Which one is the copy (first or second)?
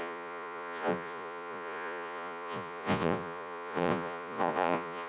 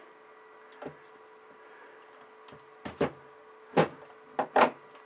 first